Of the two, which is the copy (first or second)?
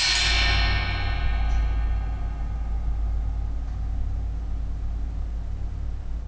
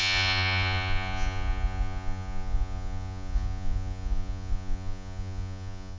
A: second